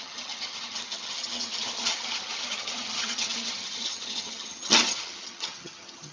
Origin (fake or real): fake